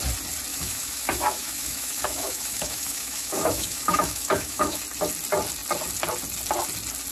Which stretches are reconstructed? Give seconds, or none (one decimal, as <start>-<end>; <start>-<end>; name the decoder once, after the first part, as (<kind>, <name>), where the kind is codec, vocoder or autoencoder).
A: 0.5-4.8 (autoencoder, DAC-VAE)